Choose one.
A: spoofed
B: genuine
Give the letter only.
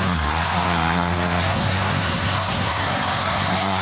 A